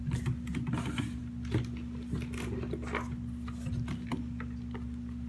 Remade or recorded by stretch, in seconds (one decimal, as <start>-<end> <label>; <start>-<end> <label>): 0.0-5.3 recorded